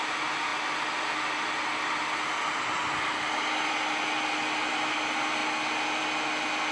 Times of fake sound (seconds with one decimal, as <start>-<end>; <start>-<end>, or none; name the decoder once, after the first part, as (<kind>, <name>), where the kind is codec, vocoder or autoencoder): none